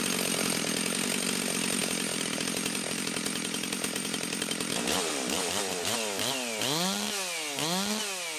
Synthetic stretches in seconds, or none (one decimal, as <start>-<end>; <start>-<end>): 1.8-5.1